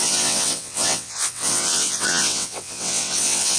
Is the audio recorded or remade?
remade